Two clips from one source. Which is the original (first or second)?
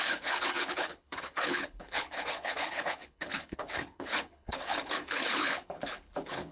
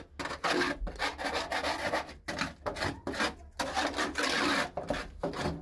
second